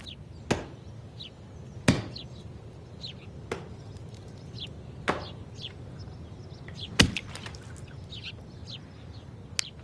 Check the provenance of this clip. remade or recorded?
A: recorded